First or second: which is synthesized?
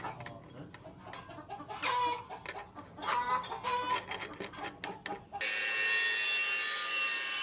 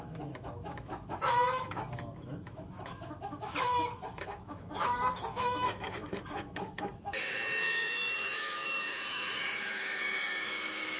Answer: second